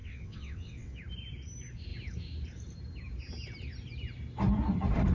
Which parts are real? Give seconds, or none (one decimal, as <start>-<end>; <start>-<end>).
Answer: 1.0-5.1